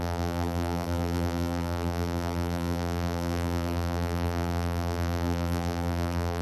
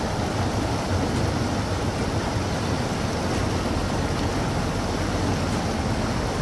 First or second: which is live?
second